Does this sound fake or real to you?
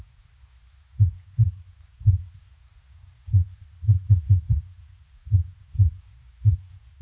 fake